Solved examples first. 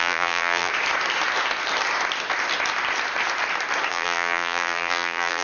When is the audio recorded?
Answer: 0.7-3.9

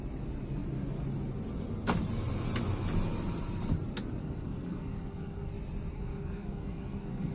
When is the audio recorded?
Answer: 0.0-4.2; 5.5-5.9

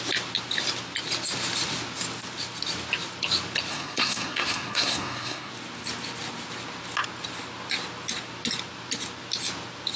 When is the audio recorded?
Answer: 0.0-3.7; 5.5-10.0

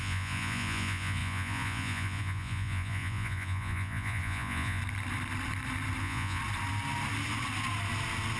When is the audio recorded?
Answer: 4.8-6.0; 6.4-8.4